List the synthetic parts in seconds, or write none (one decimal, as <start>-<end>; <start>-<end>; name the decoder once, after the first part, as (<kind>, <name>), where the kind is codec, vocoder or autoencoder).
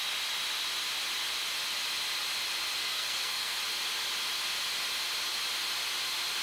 2.8-3.6 (codec, SNAC)